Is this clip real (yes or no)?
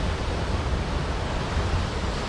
yes